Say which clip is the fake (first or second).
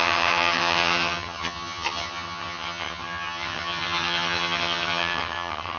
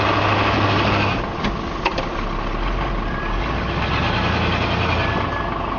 first